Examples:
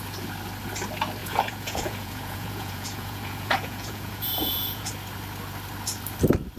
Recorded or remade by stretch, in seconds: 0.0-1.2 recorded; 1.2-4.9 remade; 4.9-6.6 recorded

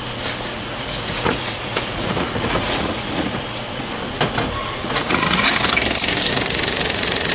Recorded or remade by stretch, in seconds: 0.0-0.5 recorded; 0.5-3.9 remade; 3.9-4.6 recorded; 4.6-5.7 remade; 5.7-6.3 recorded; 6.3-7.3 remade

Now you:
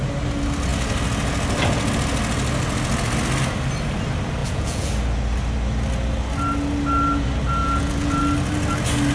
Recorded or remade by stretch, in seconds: 0.0-4.4 recorded; 4.4-4.9 remade; 4.9-7.6 recorded; 7.6-8.2 remade; 8.2-9.1 recorded

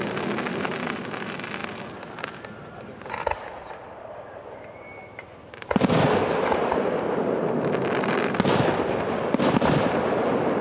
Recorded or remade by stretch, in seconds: 0.0-10.6 recorded